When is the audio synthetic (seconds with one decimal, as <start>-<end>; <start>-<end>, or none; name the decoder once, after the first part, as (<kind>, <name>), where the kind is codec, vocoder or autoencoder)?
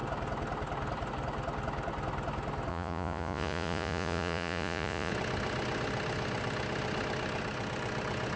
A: 2.7-5.1 (vocoder, Vocos)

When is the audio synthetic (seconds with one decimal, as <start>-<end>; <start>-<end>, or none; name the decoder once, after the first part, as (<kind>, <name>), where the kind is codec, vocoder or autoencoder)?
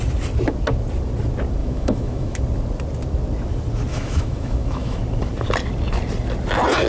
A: 1.6-2.4 (autoencoder, DAC-VAE); 3.9-5.0